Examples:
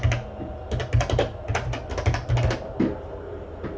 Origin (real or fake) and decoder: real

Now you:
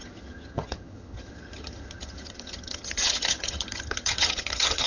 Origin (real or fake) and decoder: fake, vocoder, HiFi-GAN